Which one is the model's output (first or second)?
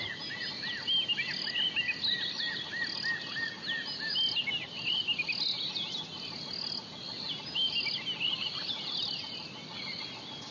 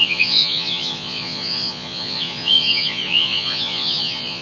second